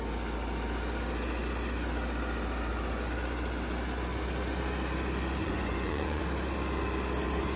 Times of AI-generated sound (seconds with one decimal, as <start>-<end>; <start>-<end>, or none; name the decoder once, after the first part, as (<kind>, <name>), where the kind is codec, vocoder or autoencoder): 5.4-6.2 (vocoder, Vocos)